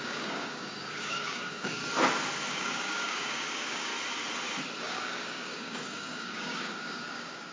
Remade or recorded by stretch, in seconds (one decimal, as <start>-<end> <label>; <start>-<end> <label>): 0.0-1.8 remade; 1.8-2.5 recorded; 2.5-3.9 remade; 3.9-4.8 recorded; 4.8-7.5 remade